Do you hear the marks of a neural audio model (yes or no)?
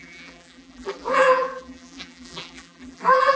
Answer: yes